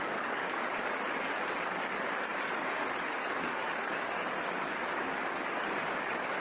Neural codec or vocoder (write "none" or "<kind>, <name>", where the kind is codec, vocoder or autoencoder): codec, DAC